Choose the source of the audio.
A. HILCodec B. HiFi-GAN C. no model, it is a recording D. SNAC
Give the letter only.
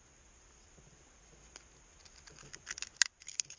C